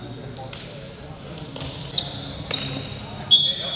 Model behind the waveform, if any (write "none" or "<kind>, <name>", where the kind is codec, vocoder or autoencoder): none